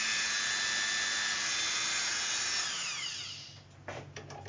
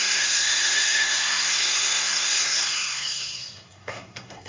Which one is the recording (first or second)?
first